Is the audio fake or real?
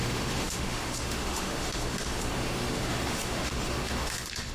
fake